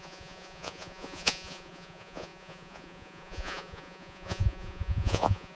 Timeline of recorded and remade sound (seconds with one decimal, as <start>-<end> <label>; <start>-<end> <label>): 0.0-5.5 remade